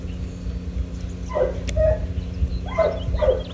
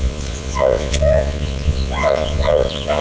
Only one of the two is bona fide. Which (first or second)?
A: first